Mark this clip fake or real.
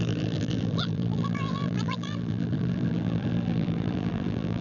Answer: fake